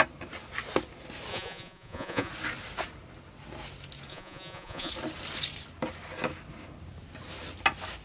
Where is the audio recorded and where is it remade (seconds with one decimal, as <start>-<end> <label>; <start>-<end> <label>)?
0.0-1.3 recorded; 1.3-2.3 remade; 2.3-4.1 recorded; 4.1-4.9 remade; 4.9-8.0 recorded